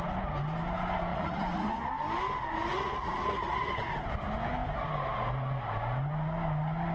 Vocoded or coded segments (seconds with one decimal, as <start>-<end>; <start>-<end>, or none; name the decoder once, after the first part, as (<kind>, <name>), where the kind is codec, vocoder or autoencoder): 1.1-1.9 (vocoder, Vocos); 2.7-3.8